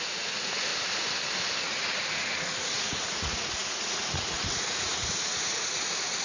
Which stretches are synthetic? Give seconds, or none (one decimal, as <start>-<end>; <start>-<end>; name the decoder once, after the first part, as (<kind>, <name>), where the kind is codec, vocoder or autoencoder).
0.0-0.7 (vocoder, Vocos); 1.6-6.2